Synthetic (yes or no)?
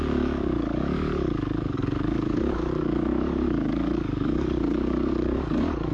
yes